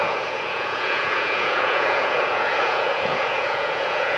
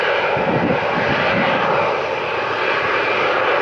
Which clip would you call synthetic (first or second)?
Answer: first